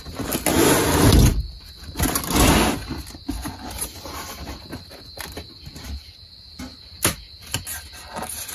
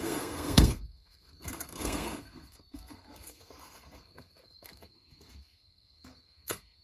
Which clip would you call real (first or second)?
first